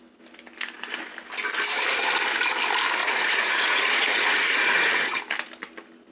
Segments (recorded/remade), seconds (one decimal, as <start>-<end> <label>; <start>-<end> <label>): 0.0-3.0 recorded; 3.0-5.2 remade; 5.2-6.1 recorded